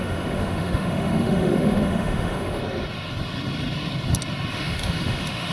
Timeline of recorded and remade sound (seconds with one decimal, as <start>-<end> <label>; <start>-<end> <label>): 0.0-2.6 remade; 2.6-4.5 recorded; 4.5-5.5 remade